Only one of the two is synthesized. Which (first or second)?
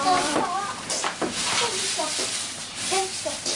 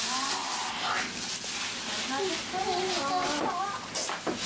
first